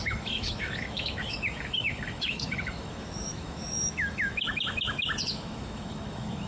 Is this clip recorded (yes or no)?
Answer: no